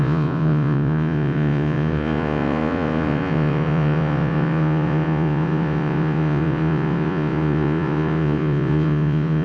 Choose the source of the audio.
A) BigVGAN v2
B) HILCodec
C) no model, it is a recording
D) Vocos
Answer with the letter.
D